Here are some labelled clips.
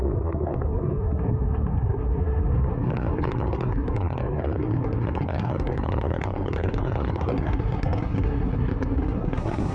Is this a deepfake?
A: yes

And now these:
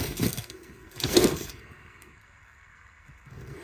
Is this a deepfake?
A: yes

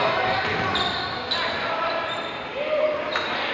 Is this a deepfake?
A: no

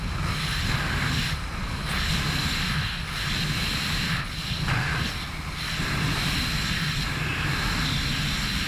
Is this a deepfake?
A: no